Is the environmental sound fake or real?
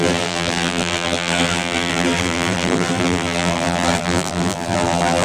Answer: fake